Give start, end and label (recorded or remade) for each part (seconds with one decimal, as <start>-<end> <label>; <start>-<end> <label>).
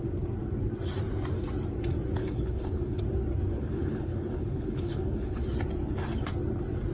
0.0-2.2 recorded; 2.2-3.0 remade; 3.0-3.5 recorded; 3.5-5.4 remade; 5.4-6.9 recorded